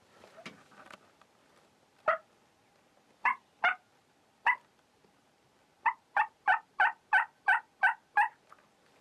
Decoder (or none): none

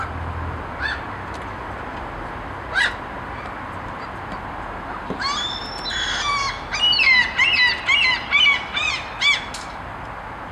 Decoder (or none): none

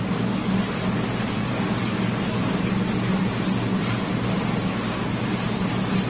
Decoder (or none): none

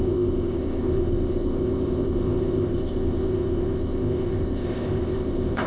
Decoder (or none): codec, ZipCodec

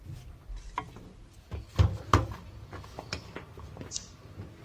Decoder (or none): none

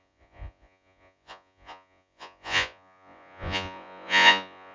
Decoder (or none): vocoder, Vocos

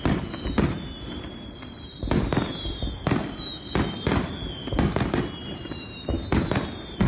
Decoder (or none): none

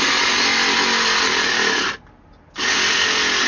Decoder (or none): none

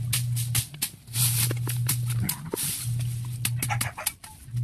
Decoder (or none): none